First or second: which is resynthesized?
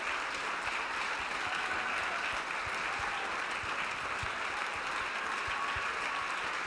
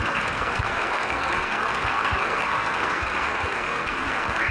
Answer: second